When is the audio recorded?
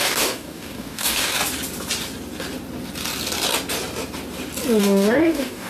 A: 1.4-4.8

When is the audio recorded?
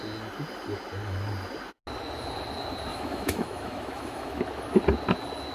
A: 0.0-2.9; 4.4-5.5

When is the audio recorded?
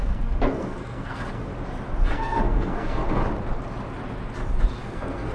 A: 1.5-2.1; 3.0-4.8